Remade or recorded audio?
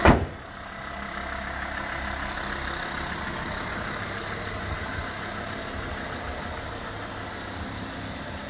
recorded